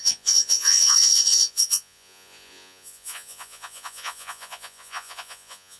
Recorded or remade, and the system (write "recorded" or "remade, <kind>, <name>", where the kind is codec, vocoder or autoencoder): remade, vocoder, Vocos